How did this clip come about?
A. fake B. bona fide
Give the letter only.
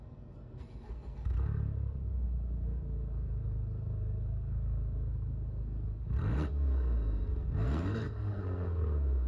A